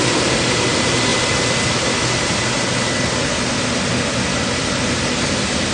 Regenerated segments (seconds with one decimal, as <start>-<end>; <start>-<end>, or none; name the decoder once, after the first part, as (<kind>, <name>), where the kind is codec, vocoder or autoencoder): none